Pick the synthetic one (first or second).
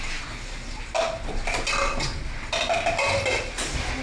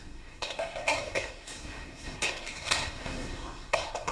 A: second